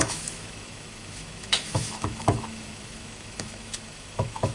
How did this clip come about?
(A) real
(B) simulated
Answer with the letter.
B